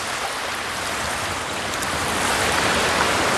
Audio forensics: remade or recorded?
recorded